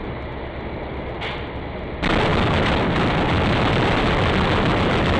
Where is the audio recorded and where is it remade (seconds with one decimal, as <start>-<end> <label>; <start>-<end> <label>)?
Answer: 0.0-5.2 recorded